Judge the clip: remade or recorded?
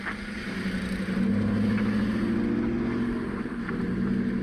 recorded